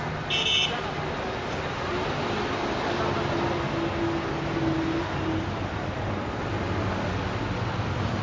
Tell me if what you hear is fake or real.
real